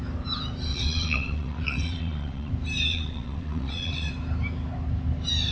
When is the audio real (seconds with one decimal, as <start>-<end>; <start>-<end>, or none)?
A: 0.0-0.7; 2.5-2.9; 4.1-5.5